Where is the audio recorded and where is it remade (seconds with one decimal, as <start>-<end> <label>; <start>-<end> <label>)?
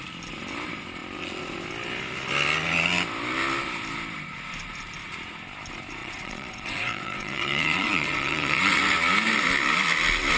0.0-6.0 recorded; 6.0-8.8 remade; 8.8-10.4 recorded